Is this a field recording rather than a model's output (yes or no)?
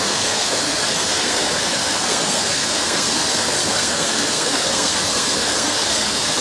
no